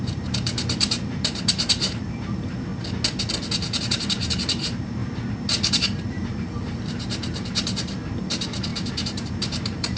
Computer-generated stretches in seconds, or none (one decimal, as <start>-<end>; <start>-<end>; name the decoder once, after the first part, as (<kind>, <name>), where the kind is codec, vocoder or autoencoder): 0.0-2.7 (vocoder, BigVGAN v2); 3.8-5.0; 5.7-10.0